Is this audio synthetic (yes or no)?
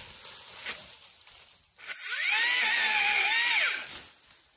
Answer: no